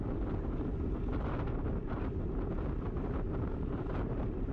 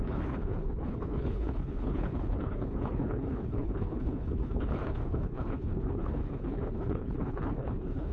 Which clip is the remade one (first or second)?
second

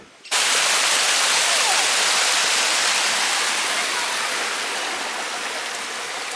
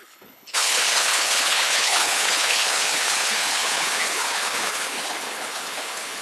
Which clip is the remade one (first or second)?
second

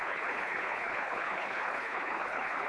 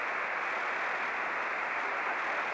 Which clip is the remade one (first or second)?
first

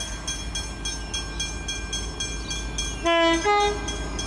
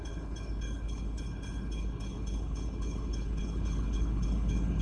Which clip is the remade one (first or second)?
second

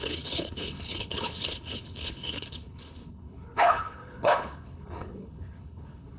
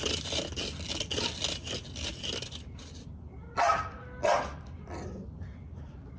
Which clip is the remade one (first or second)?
first